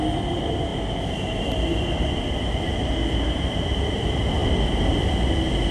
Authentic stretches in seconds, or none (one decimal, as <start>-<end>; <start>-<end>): 0.0-5.7